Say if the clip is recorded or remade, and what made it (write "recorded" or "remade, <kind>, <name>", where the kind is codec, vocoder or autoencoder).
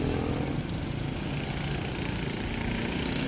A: recorded